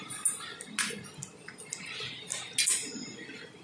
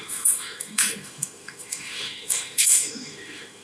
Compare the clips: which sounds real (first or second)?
first